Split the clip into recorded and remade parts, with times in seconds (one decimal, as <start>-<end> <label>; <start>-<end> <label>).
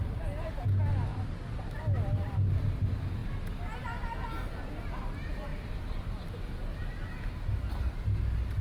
0.0-5.5 recorded; 5.5-6.1 remade; 6.1-8.6 recorded